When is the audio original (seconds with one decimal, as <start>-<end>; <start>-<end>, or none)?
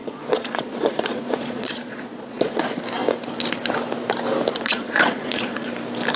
2.6-4.5; 5.7-6.2